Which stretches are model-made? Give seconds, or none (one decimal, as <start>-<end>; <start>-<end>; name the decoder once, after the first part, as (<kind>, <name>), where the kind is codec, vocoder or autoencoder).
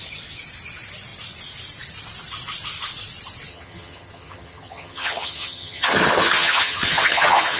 3.5-7.6 (vocoder, HiFi-GAN)